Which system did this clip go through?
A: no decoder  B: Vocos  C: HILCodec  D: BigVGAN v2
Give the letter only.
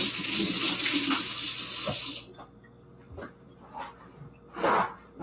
A